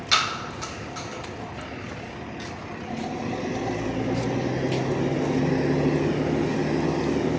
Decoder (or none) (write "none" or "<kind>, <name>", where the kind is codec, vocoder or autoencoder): none